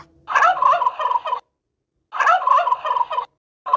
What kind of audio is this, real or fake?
real